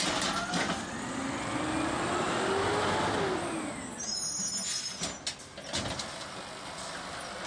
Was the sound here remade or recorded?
recorded